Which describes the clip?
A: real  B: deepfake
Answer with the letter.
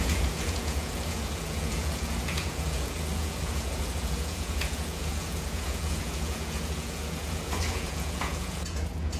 B